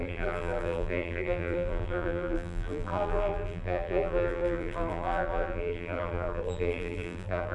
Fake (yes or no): yes